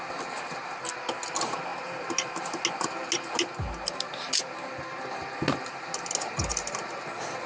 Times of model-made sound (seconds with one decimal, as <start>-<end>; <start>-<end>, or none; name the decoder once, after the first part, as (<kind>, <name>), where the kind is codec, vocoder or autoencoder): none